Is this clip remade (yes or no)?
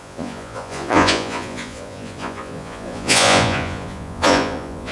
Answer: yes